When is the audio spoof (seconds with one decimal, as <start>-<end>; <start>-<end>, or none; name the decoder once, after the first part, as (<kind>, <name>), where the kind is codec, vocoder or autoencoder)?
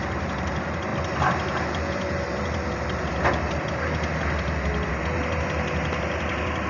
none